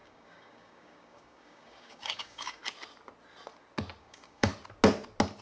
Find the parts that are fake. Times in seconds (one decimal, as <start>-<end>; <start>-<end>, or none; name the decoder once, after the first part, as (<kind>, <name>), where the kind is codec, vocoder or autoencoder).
0.0-2.6 (codec, DAC); 4.0-4.5